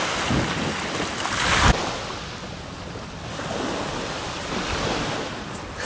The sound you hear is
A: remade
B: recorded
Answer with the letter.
B